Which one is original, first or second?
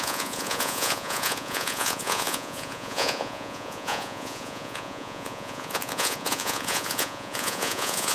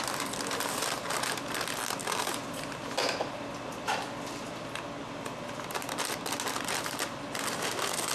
second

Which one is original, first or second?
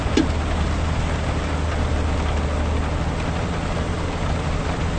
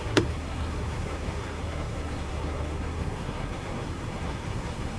first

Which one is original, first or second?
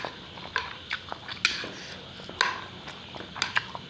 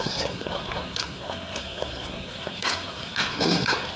first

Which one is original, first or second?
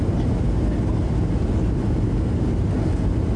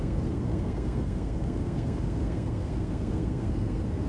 first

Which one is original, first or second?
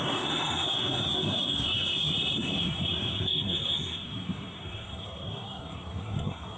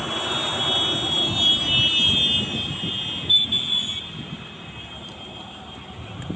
second